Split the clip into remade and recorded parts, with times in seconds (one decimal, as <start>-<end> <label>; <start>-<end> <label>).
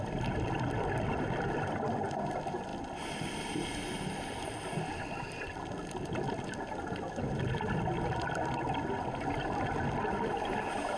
0.0-11.0 recorded